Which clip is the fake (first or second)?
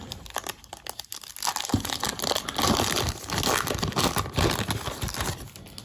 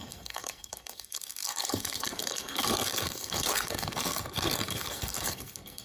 second